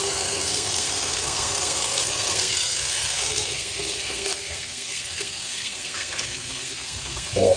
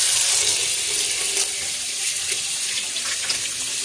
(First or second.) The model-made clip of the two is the first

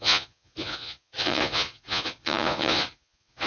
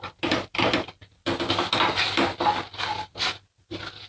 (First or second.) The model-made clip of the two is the first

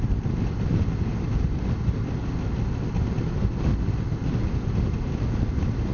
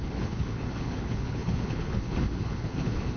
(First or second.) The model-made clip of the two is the second